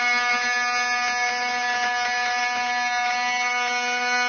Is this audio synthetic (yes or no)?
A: no